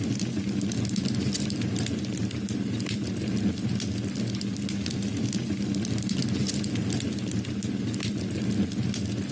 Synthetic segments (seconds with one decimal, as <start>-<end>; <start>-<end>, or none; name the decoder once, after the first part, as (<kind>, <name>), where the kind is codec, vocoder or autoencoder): none